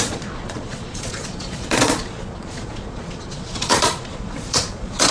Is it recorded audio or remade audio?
remade